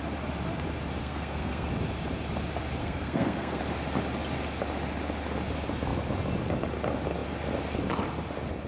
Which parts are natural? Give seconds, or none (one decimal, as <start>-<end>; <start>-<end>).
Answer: 0.0-1.0; 1.7-2.8; 3.6-8.7